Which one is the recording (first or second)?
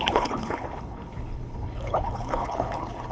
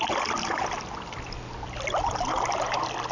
second